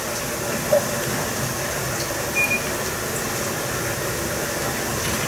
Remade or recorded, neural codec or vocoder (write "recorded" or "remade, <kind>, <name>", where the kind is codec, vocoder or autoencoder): recorded